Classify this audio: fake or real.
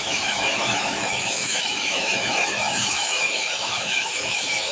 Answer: fake